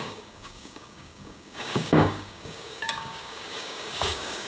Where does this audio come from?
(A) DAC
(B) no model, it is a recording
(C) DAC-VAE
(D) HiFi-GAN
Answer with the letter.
A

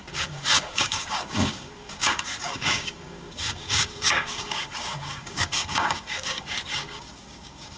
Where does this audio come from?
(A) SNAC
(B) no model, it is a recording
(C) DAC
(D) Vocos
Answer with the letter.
C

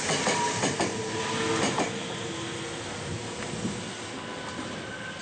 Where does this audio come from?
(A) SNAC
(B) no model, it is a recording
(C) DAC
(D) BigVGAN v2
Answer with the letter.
B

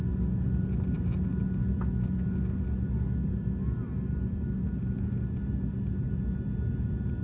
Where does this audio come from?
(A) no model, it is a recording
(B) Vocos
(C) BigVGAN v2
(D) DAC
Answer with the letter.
A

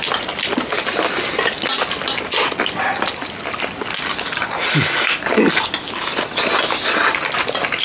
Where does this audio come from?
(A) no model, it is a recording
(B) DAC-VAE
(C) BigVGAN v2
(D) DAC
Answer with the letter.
A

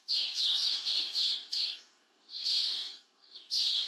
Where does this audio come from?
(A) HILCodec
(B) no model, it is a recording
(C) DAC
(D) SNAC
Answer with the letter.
C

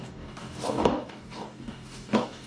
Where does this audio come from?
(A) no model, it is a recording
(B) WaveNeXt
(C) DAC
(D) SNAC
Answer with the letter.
C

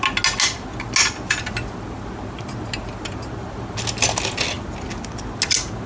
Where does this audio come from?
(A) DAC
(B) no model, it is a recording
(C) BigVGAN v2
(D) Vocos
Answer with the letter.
B